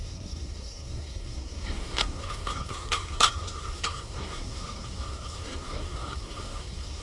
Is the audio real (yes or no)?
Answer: no